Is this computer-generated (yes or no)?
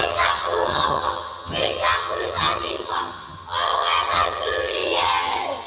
yes